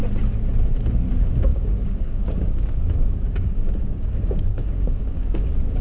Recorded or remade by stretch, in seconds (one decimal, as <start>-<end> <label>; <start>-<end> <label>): 0.0-1.1 recorded; 1.1-5.8 remade